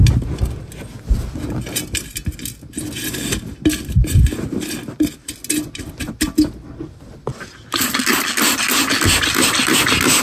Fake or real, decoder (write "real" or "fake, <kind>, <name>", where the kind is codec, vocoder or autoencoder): real